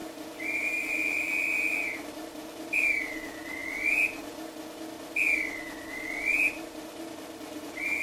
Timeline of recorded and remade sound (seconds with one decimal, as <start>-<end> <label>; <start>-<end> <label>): 0.0-3.6 remade; 3.6-6.5 recorded; 6.5-8.0 remade